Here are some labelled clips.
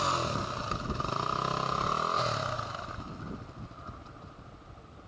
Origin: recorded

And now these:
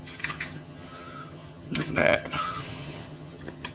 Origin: remade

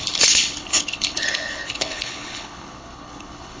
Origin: remade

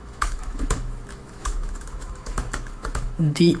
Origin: remade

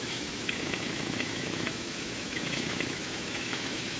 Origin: remade